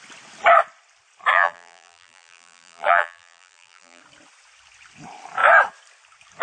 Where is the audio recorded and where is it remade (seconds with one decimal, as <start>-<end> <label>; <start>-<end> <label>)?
0.0-1.3 recorded; 1.3-4.0 remade; 4.0-6.4 recorded